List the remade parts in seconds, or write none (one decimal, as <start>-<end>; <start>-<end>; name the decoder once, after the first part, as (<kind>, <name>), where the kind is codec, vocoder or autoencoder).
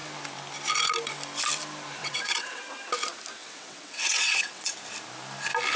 2.0-2.6 (vocoder, WaveNeXt); 3.4-4.7